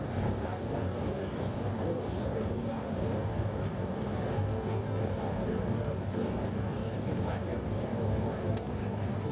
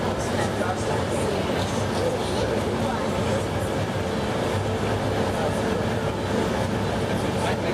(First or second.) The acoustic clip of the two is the second